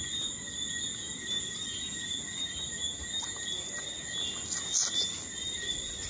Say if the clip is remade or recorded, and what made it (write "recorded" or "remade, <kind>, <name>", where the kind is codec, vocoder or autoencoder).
recorded